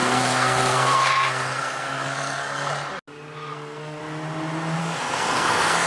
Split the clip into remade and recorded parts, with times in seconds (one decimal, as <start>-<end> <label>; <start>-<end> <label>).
0.0-2.7 remade; 2.7-3.5 recorded; 3.5-4.0 remade; 4.0-4.8 recorded; 4.8-5.9 remade